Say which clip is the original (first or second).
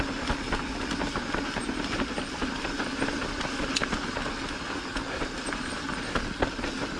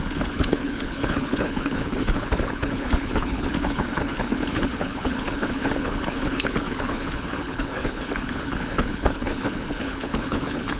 first